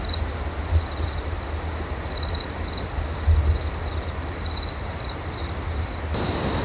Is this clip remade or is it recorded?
recorded